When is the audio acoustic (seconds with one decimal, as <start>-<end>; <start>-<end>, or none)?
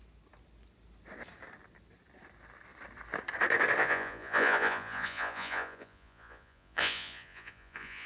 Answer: 0.0-3.8